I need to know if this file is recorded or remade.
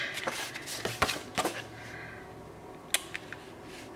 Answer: recorded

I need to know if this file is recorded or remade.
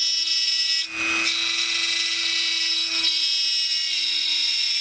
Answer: recorded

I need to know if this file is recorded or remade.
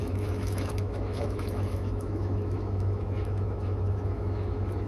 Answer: remade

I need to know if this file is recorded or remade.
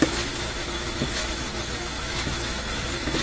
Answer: remade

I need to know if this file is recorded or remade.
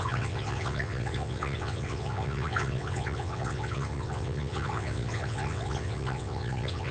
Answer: remade